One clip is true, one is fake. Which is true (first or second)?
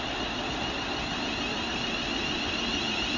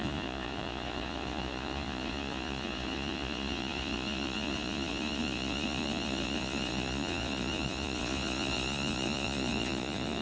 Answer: first